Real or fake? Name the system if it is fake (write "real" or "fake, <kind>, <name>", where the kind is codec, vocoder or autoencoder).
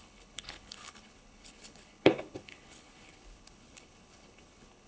fake, codec, HILCodec